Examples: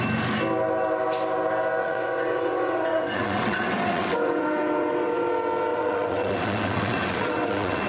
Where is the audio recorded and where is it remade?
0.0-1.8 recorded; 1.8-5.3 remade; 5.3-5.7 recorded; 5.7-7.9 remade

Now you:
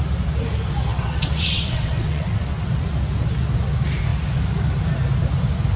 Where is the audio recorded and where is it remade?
0.0-0.9 recorded; 0.9-2.7 remade; 2.7-5.8 recorded

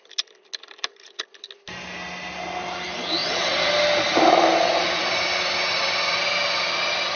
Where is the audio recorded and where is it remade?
0.0-3.2 recorded; 3.2-3.7 remade; 3.7-7.2 recorded